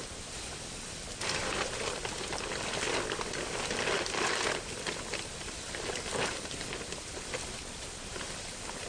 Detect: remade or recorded recorded